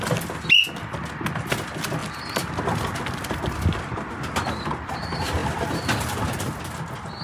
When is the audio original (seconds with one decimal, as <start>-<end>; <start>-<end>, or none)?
0.0-5.4; 6.6-7.2